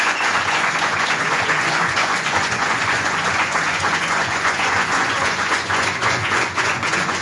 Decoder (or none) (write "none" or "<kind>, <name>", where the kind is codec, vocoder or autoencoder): vocoder, Vocos